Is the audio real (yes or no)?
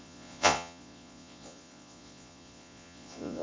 no